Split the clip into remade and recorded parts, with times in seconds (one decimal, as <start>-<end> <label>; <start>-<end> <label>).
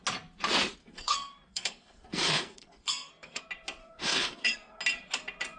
0.0-0.8 recorded; 0.8-3.4 remade; 3.4-3.8 recorded; 3.8-4.8 remade; 4.8-5.6 recorded